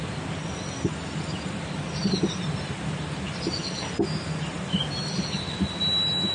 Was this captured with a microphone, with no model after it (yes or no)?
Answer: yes